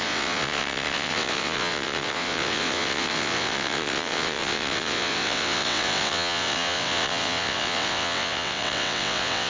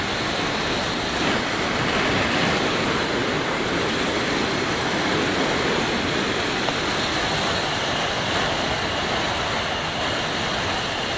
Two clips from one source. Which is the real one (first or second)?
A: second